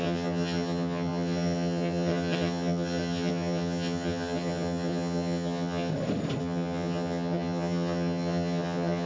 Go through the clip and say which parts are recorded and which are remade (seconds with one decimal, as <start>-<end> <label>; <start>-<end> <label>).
0.0-5.9 remade; 5.9-6.4 recorded; 6.4-9.1 remade